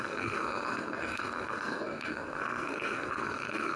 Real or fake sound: fake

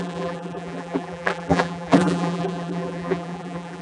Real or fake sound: fake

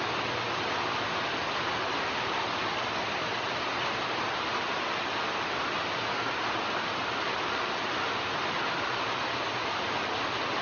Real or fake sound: real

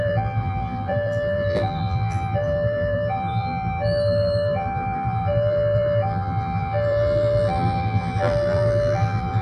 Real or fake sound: fake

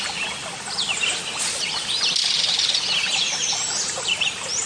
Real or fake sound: real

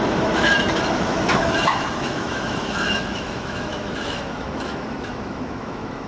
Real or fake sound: fake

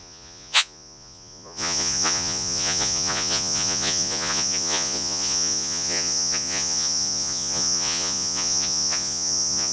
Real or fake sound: fake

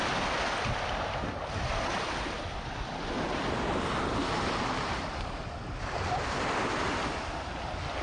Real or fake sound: real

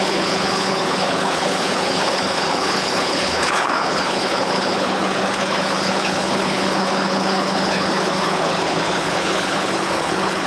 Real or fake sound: fake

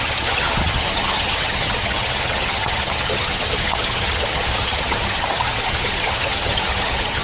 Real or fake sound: fake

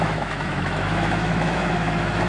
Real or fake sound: fake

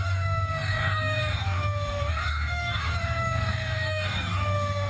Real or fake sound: fake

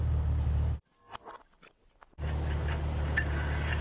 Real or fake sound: real